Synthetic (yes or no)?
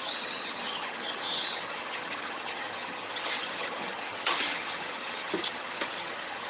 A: yes